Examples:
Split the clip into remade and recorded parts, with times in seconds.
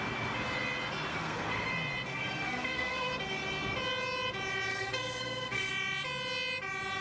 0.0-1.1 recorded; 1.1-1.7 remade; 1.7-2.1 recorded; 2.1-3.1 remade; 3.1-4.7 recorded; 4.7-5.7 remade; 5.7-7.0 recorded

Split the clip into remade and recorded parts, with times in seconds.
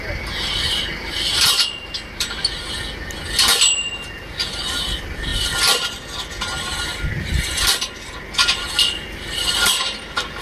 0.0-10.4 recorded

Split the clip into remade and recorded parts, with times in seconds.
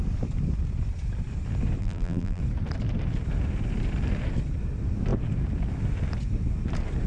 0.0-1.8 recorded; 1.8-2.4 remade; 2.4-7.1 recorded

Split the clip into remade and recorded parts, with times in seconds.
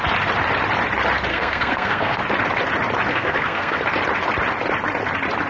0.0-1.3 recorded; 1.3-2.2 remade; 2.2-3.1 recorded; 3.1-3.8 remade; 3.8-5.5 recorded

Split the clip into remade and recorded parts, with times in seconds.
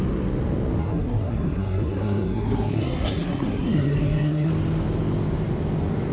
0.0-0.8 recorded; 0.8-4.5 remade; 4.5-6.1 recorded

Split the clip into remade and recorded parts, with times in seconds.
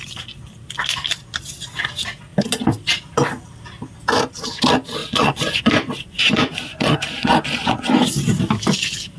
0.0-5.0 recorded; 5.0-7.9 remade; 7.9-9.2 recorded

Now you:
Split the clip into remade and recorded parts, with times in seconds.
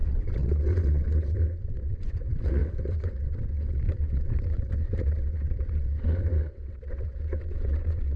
0.0-8.2 remade